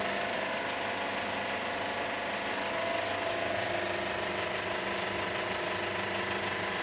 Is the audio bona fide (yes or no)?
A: yes